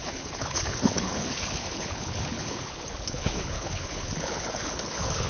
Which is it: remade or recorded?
remade